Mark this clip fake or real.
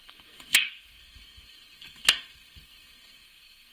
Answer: fake